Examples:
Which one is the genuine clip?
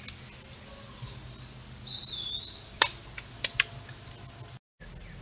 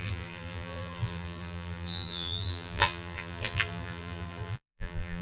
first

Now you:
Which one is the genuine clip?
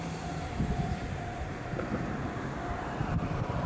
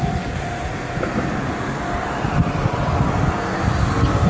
second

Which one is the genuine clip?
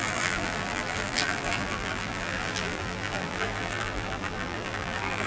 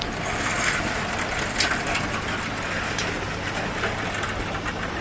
second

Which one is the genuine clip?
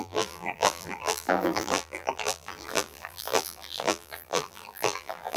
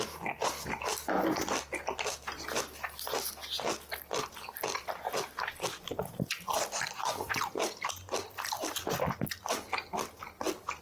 second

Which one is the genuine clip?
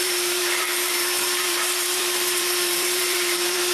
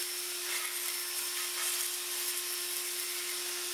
second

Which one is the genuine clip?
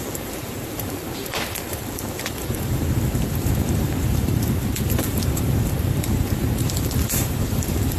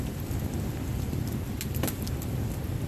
second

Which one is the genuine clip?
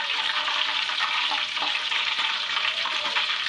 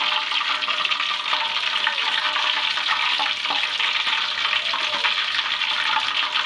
second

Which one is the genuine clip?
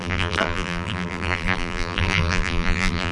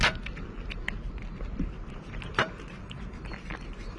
second